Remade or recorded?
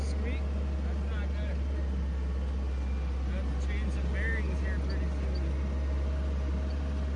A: recorded